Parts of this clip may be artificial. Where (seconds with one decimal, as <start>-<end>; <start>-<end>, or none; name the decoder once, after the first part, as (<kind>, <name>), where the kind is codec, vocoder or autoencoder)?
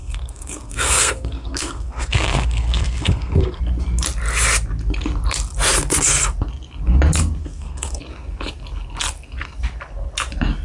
0.0-3.6 (codec, SNAC); 7.4-8.0